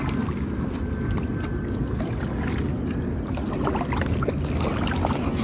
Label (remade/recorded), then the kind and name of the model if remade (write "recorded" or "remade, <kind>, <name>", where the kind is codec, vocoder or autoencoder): recorded